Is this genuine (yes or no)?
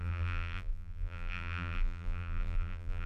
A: no